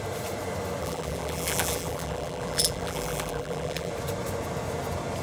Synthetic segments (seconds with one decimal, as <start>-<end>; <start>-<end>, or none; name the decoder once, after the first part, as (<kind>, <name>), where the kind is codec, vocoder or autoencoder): 0.8-3.9 (vocoder, BigVGAN v2)

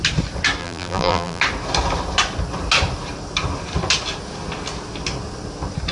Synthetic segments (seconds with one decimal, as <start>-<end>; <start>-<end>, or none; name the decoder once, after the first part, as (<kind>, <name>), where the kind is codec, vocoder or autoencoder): 0.6-1.4 (vocoder, BigVGAN v2)

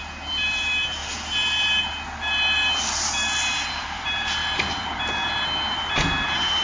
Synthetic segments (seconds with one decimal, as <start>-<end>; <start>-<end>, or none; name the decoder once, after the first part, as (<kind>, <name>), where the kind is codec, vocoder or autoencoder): 0.0-6.6 (vocoder, BigVGAN v2)

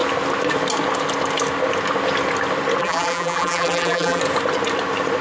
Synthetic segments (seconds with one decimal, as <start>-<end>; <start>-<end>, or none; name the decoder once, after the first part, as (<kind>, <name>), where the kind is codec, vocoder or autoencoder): 2.8-4.2 (vocoder, BigVGAN v2)

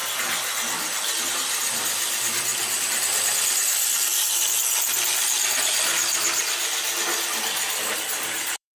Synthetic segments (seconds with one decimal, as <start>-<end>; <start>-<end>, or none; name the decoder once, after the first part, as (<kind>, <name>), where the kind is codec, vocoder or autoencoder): 1.2-2.5 (vocoder, BigVGAN v2); 7.4-8.8

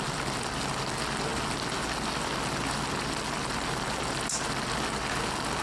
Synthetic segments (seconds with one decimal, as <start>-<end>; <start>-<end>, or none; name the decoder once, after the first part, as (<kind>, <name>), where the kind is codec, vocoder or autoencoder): none

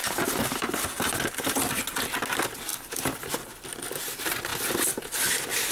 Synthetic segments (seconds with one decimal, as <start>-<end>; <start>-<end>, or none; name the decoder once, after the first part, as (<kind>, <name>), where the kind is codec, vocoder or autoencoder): 0.0-1.1 (vocoder, BigVGAN v2)

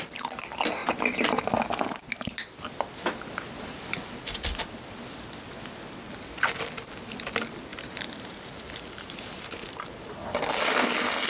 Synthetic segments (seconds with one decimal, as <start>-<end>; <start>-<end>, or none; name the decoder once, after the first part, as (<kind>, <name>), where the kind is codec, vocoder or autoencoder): 0.8-1.4 (vocoder, BigVGAN v2); 7.7-10.4